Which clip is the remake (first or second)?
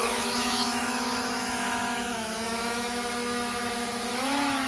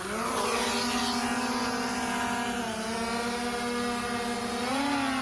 first